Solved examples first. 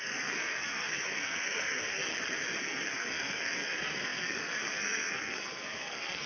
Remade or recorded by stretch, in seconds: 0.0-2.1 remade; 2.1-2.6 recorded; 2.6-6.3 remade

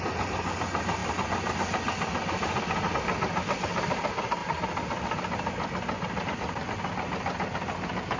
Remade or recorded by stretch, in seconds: 0.0-8.2 recorded

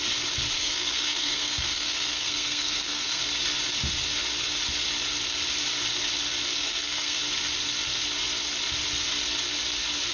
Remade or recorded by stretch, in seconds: 0.0-0.6 recorded; 0.6-3.2 remade; 3.2-6.6 recorded; 6.6-7.2 remade; 7.2-10.1 recorded

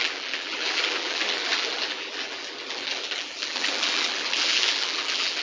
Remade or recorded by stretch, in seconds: 0.0-5.4 remade